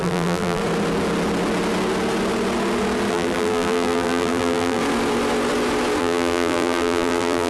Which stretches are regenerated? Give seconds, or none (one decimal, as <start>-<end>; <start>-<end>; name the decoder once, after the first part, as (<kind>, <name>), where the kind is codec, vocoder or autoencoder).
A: 0.0-0.6 (vocoder, BigVGAN v2); 3.1-4.8; 6.0-7.5

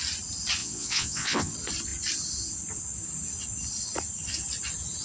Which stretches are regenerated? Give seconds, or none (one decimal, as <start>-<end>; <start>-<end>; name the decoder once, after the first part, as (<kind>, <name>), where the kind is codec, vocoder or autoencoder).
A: 0.6-1.5 (vocoder, WaveNeXt)

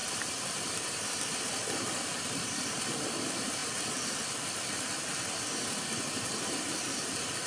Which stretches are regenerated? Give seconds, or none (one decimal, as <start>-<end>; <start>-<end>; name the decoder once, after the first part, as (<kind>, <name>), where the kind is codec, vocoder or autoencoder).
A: 0.0-3.6 (vocoder, BigVGAN v2); 5.6-7.5

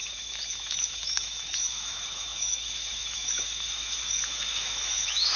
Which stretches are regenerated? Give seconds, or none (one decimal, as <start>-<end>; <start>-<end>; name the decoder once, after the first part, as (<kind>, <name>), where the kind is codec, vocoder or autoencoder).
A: 0.0-5.4 (autoencoder, DAC-VAE)

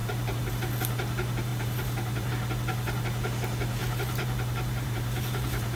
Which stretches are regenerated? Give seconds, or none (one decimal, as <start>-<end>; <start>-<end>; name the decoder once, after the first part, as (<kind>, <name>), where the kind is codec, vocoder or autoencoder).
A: 0.0-0.5 (vocoder, BigVGAN v2); 1.5-2.3; 3.8-5.8

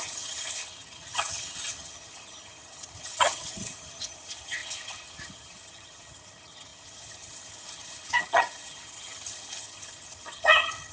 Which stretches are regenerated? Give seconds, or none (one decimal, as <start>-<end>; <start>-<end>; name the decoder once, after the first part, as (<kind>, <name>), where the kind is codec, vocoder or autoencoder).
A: 0.0-10.9 (vocoder, HiFi-GAN)

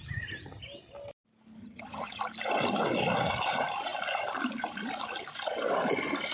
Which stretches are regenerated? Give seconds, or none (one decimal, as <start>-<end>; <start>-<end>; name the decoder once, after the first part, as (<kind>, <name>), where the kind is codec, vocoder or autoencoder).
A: 1.6-2.2 (vocoder, HiFi-GAN)